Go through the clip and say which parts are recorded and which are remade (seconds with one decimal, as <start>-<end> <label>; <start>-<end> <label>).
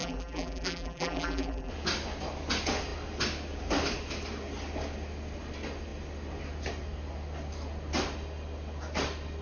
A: 0.0-1.7 remade; 1.7-9.4 recorded